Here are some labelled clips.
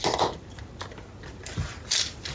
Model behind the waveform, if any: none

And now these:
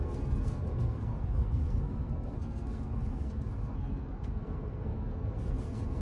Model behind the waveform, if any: codec, SNAC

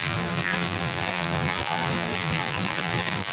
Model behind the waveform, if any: vocoder, BigVGAN v2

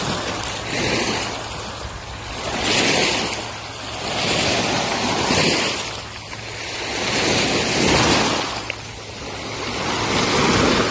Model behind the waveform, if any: none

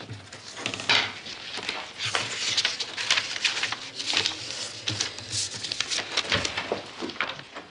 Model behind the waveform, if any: none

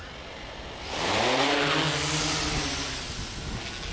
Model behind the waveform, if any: none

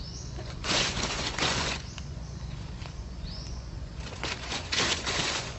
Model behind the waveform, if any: vocoder, Vocos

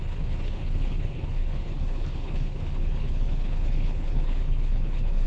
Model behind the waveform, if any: codec, HILCodec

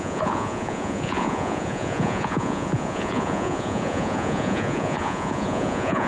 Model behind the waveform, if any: vocoder, Vocos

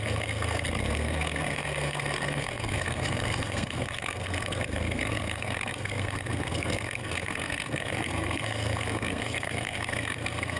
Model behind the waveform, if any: codec, SNAC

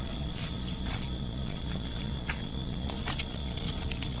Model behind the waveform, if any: vocoder, Vocos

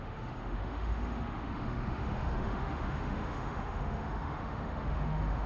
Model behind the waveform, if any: autoencoder, DAC-VAE